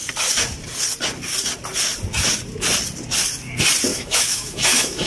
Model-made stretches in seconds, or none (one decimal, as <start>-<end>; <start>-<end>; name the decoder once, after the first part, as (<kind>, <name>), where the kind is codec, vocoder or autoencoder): 3.9-5.1 (autoencoder, DAC-VAE)